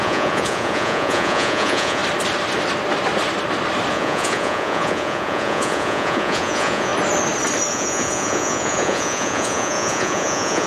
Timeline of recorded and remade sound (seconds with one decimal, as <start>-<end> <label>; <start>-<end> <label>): 0.0-2.0 remade; 2.0-3.9 recorded; 3.9-6.9 remade; 6.9-7.7 recorded; 7.7-10.7 remade